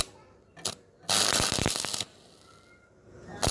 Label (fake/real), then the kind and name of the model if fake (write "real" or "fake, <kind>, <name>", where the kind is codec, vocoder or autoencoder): real